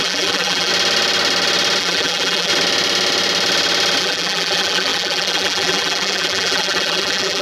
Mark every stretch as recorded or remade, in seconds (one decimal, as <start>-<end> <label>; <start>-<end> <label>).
0.0-0.7 remade; 0.7-1.8 recorded; 1.8-2.5 remade; 2.5-4.0 recorded; 4.0-7.4 remade